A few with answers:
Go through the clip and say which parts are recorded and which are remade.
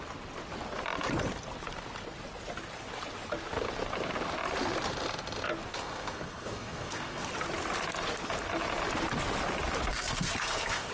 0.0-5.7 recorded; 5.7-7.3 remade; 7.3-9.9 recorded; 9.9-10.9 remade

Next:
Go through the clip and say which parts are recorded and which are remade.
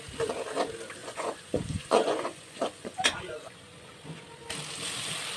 0.0-1.0 recorded; 1.0-4.2 remade; 4.2-5.4 recorded